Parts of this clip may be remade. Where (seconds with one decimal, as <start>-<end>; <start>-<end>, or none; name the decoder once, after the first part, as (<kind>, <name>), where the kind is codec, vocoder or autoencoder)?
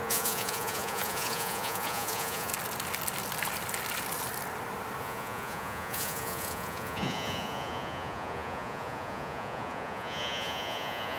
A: 0.0-2.5 (vocoder, Vocos); 5.0-11.2